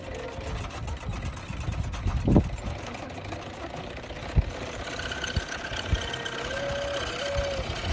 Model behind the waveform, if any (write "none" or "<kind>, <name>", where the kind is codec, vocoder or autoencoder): none